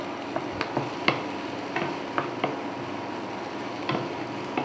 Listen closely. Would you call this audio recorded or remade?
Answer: recorded